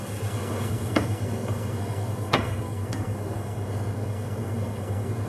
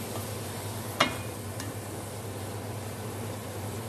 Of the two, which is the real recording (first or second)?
second